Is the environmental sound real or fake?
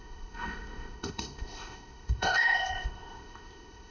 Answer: fake